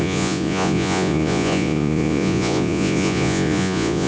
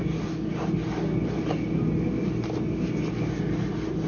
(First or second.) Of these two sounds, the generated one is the first